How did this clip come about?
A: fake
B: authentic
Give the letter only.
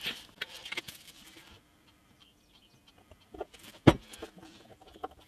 A